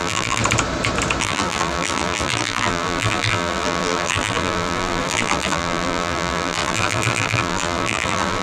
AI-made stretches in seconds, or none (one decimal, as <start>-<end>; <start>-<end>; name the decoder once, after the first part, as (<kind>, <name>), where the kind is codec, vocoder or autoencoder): 0.0-0.4 (vocoder, BigVGAN v2); 1.2-8.4